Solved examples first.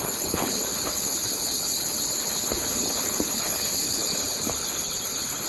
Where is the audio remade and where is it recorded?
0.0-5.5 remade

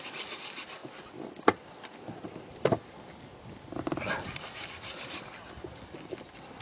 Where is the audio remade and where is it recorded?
0.0-6.6 recorded

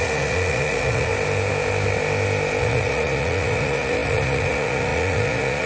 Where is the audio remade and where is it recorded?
0.0-1.1 remade; 1.1-2.6 recorded; 2.6-5.7 remade